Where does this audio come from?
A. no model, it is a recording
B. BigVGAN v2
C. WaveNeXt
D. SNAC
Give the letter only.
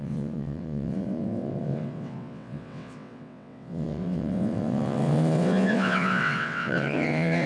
C